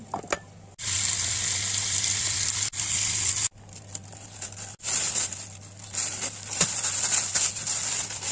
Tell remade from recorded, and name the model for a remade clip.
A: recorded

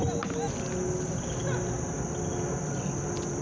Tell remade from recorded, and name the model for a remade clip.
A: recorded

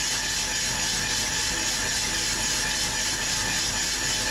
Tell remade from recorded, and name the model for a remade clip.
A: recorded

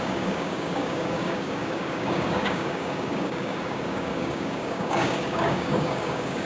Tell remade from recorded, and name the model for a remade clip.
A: remade, codec, DAC